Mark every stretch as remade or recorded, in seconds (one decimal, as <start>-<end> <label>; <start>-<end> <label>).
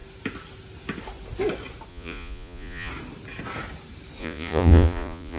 0.0-1.9 recorded; 1.9-2.9 remade; 2.9-4.2 recorded; 4.2-5.4 remade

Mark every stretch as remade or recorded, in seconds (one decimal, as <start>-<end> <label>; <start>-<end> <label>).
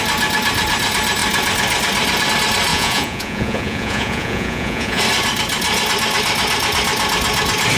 0.0-2.7 recorded; 2.7-5.0 remade; 5.0-7.8 recorded